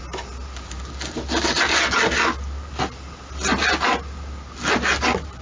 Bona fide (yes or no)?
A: yes